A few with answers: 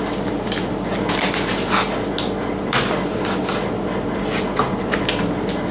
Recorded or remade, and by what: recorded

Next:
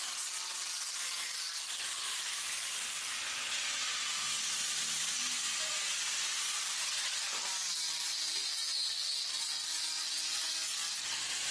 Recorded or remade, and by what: recorded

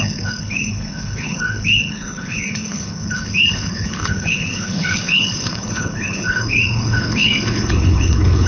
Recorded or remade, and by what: remade, codec, HILCodec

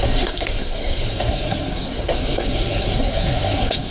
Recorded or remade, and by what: remade, codec, SNAC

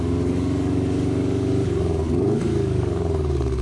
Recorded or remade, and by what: remade, codec, DAC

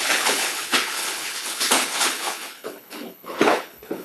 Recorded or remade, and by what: remade, codec, HILCodec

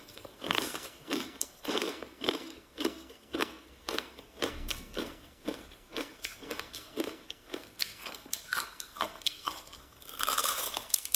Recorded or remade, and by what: remade, codec, SNAC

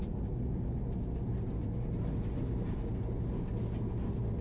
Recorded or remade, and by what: recorded